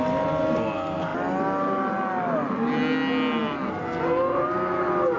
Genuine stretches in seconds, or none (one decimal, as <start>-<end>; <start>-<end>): 0.0-5.2